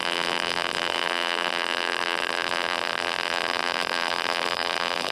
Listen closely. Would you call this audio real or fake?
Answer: fake